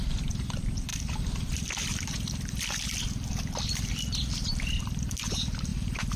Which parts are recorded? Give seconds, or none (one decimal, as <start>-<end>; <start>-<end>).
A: none